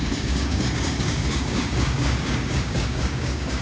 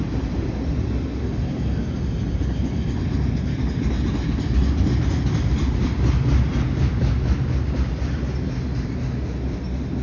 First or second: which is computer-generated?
first